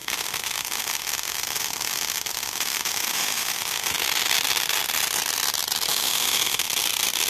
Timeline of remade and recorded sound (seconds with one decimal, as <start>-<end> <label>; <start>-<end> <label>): 0.0-3.9 remade; 3.9-5.9 recorded; 5.9-6.7 remade; 6.7-7.3 recorded